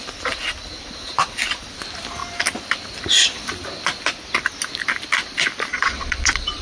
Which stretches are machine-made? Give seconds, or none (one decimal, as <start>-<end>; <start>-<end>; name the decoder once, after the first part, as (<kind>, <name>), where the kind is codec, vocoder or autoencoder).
5.7-6.6 (vocoder, Vocos)